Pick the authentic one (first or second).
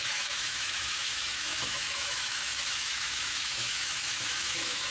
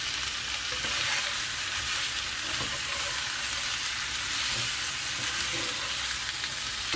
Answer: second